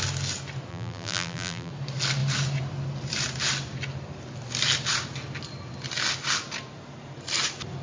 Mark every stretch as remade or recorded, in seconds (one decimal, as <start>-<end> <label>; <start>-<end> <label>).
0.0-0.7 recorded; 0.7-1.7 remade; 1.7-7.8 recorded